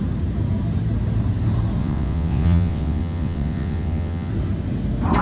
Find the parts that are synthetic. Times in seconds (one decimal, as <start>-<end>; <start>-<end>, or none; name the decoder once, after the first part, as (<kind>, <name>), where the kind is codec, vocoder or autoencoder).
1.8-4.3 (vocoder, WaveNeXt)